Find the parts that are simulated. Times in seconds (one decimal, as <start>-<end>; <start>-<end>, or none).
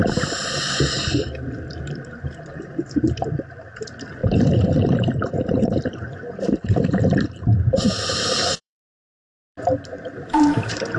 1.5-9.5; 10.1-11.0